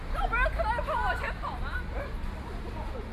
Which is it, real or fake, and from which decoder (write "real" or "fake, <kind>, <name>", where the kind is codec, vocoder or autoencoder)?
real